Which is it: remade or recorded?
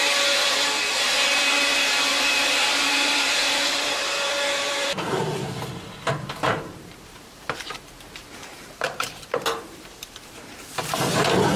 remade